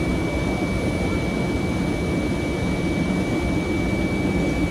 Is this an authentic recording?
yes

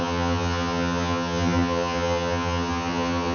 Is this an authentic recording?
no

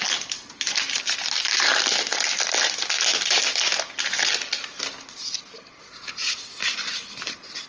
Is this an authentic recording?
yes